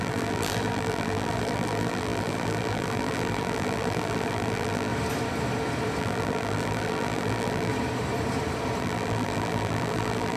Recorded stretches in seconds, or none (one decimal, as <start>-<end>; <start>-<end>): 4.9-6.0; 7.7-8.8